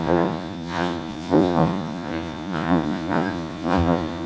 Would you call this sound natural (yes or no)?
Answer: no